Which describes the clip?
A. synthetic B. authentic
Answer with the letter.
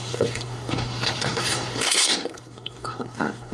A